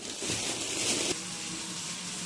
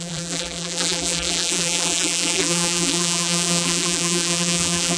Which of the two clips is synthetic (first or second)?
second